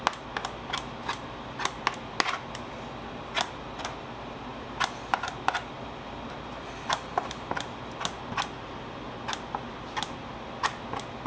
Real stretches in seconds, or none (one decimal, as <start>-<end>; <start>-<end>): 0.0-11.3